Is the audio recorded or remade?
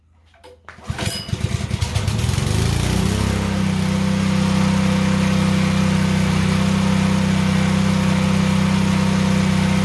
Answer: recorded